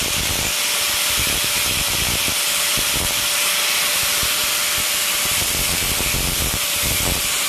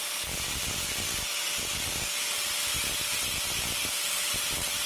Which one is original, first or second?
second